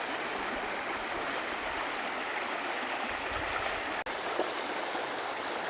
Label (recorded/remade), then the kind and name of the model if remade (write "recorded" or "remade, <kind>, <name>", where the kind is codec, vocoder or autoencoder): recorded